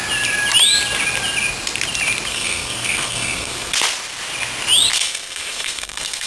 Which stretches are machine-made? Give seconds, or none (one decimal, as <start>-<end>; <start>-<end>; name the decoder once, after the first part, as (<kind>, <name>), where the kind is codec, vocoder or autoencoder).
2.3-3.7 (codec, SNAC); 4.9-6.3